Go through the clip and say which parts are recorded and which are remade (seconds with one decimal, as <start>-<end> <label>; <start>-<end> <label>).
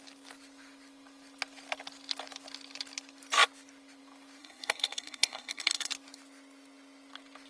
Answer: 0.0-4.4 recorded; 4.4-5.9 remade; 5.9-7.5 recorded